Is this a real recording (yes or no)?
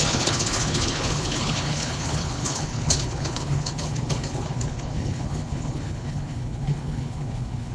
no